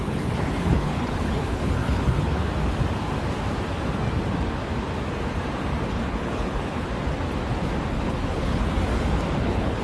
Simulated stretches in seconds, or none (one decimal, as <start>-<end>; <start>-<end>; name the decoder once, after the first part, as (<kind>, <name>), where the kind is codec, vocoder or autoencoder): 0.0-2.4 (codec, HILCodec); 5.9-6.9; 7.9-8.7; 9.4-9.8